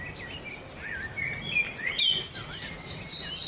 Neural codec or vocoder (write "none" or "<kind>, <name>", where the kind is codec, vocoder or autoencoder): none